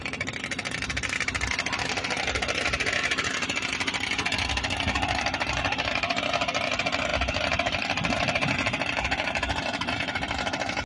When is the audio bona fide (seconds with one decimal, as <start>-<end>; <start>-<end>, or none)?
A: 0.0-10.9